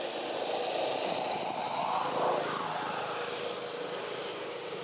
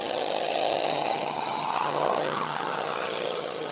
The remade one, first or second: second